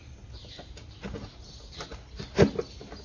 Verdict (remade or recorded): recorded